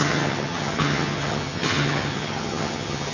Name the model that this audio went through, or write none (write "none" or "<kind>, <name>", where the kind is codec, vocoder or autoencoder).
vocoder, HiFi-GAN